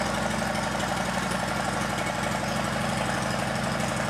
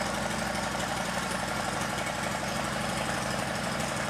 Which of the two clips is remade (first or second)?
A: second